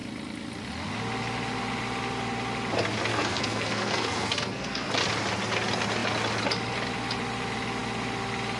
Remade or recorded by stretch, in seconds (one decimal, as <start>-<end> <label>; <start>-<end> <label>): 0.0-3.1 recorded; 3.1-4.9 remade; 4.9-8.6 recorded